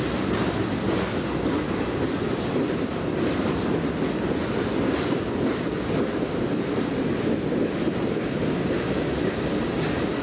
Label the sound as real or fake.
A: real